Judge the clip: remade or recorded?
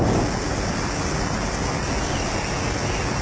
recorded